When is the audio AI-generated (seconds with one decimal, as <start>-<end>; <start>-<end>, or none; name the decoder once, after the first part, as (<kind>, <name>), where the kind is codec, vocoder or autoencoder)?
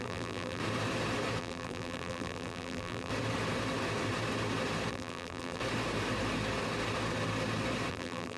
0.0-0.6 (vocoder, BigVGAN v2); 1.4-3.1; 4.9-5.6; 7.9-8.4